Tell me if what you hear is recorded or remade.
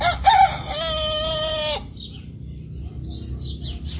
recorded